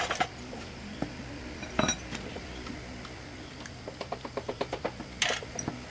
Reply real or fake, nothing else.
real